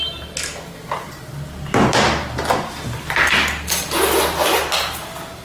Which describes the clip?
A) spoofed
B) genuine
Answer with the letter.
B